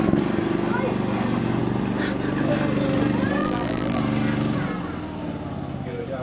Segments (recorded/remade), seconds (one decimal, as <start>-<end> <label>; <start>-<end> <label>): 0.0-3.4 recorded; 3.4-4.0 remade; 4.0-6.2 recorded